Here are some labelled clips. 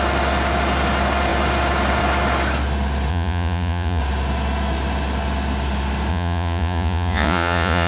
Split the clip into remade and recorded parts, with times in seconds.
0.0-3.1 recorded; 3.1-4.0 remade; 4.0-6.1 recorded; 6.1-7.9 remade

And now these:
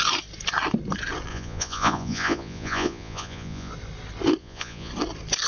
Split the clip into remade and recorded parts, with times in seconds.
0.0-1.3 recorded; 1.3-3.7 remade; 3.7-4.4 recorded; 4.4-4.9 remade; 4.9-5.5 recorded

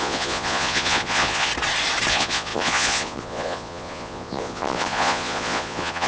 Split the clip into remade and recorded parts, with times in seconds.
0.0-1.5 remade; 1.5-2.1 recorded; 2.1-6.1 remade

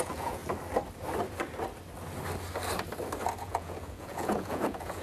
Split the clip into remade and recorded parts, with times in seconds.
0.0-0.4 remade; 0.4-3.4 recorded; 3.4-5.0 remade

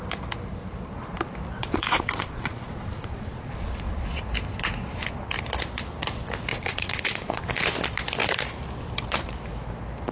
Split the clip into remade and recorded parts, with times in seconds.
0.0-1.6 recorded; 1.6-4.2 remade; 4.2-6.5 recorded; 6.5-7.5 remade; 7.5-10.1 recorded

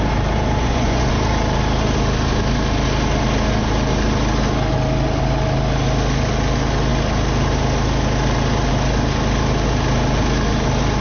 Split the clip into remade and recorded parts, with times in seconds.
0.0-0.6 recorded; 0.6-1.1 remade; 1.1-11.0 recorded